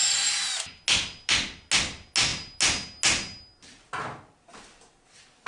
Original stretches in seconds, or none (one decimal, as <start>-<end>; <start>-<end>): 0.0-5.5